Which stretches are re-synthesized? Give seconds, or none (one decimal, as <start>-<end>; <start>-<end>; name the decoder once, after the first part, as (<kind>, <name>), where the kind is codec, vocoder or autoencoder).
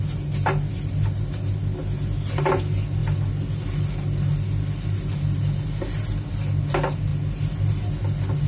none